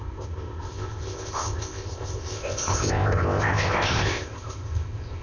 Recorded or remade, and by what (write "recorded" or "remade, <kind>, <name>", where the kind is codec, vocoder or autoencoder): remade, codec, ZipCodec